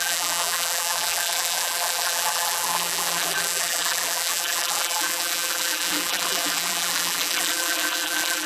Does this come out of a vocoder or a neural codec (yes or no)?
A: yes